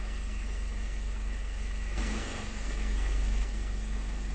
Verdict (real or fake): fake